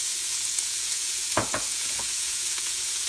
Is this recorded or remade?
remade